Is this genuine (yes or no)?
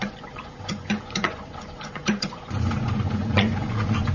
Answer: no